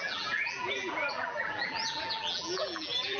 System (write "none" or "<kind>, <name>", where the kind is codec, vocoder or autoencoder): vocoder, BigVGAN v2